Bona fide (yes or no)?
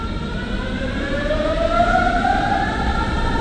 no